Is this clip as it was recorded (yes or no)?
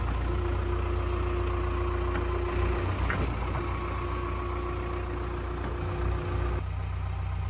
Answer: yes